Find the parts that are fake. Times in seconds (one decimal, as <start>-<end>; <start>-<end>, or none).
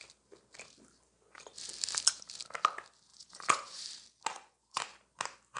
3.1-3.8; 4.3-4.8